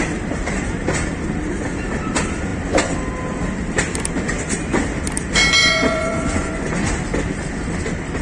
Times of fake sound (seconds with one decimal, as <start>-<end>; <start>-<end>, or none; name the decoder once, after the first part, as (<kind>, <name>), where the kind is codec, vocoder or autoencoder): 5.6-6.9 (vocoder, Vocos)